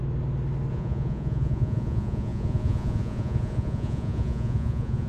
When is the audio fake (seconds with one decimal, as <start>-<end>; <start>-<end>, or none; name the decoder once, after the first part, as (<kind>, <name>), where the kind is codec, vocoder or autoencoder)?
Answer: 0.7-5.1 (vocoder, Vocos)